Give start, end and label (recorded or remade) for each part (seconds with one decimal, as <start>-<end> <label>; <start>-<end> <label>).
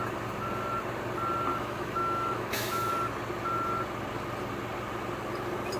0.0-1.5 recorded; 1.5-2.9 remade; 2.9-5.8 recorded